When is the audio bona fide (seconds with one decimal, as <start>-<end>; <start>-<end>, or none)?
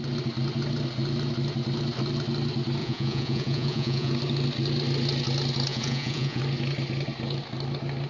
0.0-2.8; 4.1-5.7; 6.4-8.1